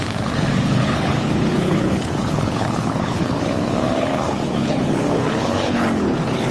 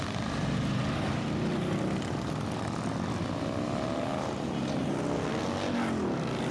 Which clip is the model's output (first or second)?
first